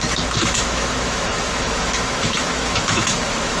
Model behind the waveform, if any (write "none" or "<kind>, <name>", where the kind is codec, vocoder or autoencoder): autoencoder, DAC-VAE